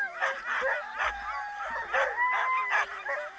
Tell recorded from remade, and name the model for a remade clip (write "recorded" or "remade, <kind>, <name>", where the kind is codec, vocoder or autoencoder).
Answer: recorded